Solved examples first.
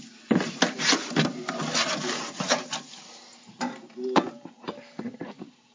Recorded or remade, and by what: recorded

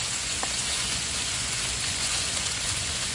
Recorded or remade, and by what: remade, vocoder, Vocos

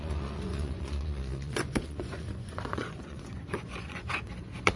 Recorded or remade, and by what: remade, vocoder, Vocos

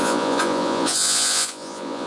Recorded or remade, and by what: remade, vocoder, Vocos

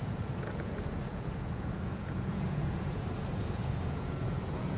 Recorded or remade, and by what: remade, vocoder, Vocos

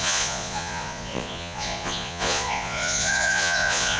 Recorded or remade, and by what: remade, vocoder, Vocos